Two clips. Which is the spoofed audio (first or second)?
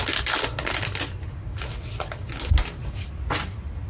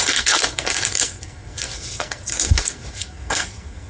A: second